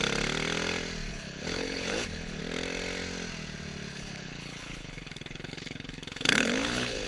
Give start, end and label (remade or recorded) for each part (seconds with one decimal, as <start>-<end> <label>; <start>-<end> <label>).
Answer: 0.0-1.1 recorded; 1.1-2.4 remade; 2.4-3.9 recorded; 3.9-7.1 remade